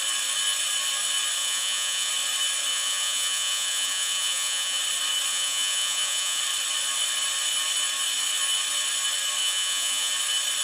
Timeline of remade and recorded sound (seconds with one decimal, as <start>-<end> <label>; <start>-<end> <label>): 0.0-1.4 recorded; 1.4-2.1 remade; 2.1-2.7 recorded; 2.7-4.8 remade; 4.8-5.3 recorded; 5.3-6.4 remade; 6.4-9.4 recorded; 9.4-10.1 remade; 10.1-10.6 recorded